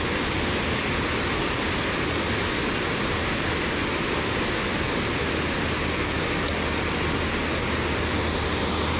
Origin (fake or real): real